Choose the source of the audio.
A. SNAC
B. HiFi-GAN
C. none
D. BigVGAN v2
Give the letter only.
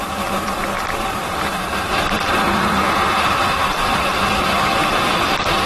D